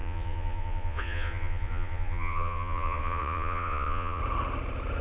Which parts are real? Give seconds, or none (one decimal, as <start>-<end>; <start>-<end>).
4.2-5.0